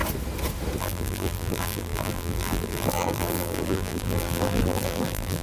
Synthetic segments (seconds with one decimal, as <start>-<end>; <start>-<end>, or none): 0.8-5.4